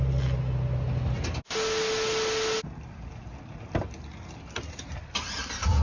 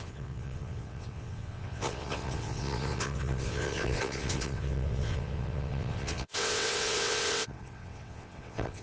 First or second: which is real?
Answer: first